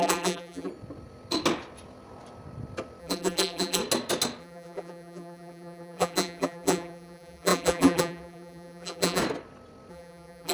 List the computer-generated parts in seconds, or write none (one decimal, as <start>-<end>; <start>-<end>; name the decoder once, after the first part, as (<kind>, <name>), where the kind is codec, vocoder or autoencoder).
0.0-0.7 (vocoder, BigVGAN v2); 3.0-3.8; 4.4-9.2; 9.9-10.5